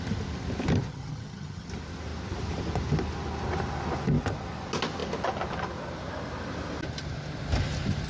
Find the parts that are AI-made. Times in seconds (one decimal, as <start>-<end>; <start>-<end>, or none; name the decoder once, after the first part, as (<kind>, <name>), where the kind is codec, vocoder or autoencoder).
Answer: 0.9-1.7 (vocoder, HiFi-GAN)